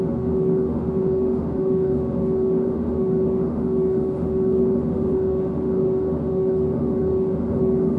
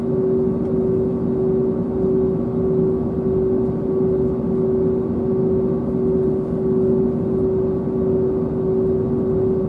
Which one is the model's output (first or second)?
first